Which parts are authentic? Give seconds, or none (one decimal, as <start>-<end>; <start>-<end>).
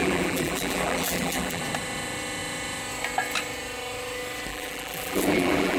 1.6-4.5